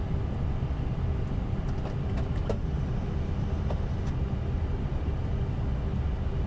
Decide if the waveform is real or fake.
real